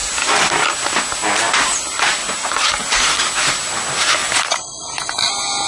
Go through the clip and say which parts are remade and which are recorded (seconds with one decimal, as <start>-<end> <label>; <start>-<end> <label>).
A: 0.0-2.2 recorded; 2.2-3.2 remade; 3.2-4.2 recorded; 4.2-5.3 remade; 5.3-5.7 recorded